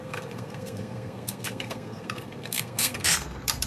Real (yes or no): no